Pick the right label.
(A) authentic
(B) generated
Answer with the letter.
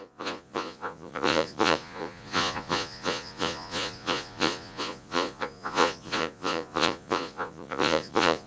B